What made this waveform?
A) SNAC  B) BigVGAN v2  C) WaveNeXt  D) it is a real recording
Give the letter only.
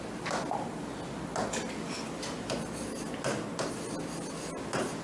D